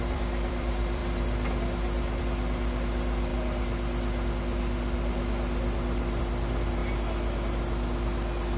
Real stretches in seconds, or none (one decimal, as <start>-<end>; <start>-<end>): 1.0-2.2; 3.3-6.2; 6.8-8.6